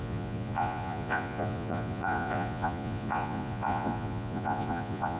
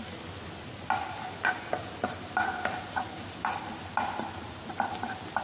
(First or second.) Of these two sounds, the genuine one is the second